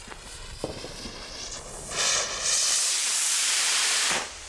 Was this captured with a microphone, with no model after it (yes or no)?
no